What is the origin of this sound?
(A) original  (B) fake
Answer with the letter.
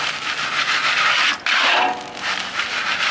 A